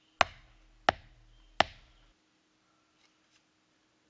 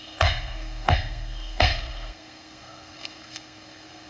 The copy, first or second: second